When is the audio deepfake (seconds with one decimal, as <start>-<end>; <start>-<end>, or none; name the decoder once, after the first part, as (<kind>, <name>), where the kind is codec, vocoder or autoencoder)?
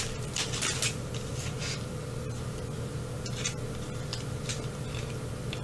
none